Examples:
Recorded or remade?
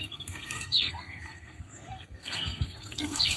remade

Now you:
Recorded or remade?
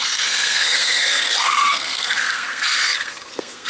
remade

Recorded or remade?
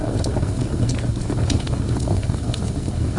remade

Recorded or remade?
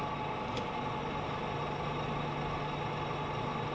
recorded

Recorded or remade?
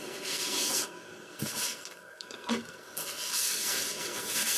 remade